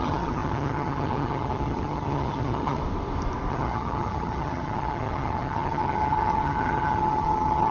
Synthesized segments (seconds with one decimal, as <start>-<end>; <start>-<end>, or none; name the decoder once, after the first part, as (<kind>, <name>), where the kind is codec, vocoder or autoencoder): 0.0-2.8 (vocoder, HiFi-GAN); 3.5-7.7